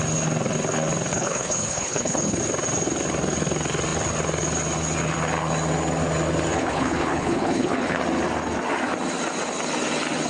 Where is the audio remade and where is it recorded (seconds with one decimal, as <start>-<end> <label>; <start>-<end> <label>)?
0.0-1.1 recorded; 1.1-2.4 remade; 2.4-6.5 recorded; 6.5-8.0 remade; 8.0-10.3 recorded